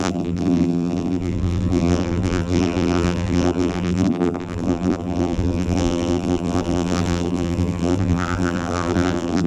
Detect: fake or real fake